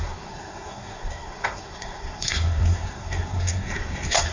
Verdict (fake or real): fake